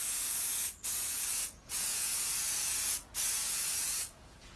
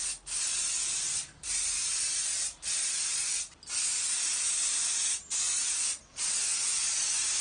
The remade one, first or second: first